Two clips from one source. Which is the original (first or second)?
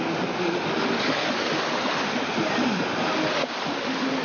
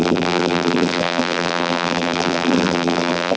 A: first